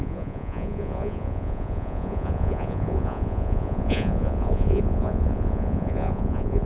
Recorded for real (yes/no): no